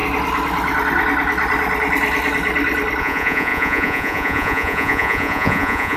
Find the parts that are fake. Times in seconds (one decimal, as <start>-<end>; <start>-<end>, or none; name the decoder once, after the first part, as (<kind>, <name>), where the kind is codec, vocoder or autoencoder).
3.0-6.0 (vocoder, Vocos)